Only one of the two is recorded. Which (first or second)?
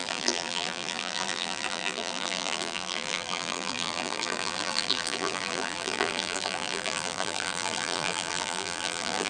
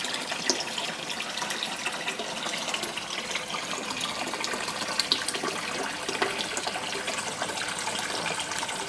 second